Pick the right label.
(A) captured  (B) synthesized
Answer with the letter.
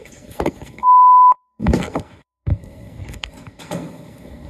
B